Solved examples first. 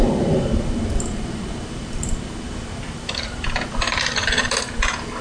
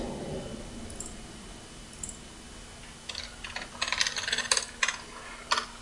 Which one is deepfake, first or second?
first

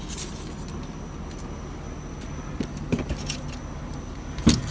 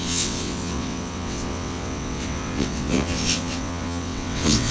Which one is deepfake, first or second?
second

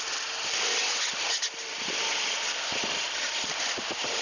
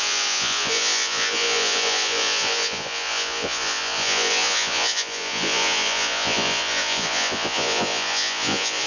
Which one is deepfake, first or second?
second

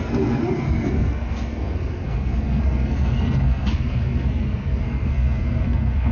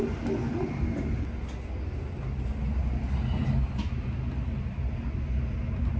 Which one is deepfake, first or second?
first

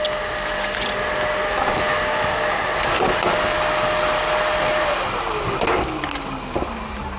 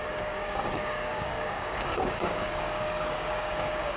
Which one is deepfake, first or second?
second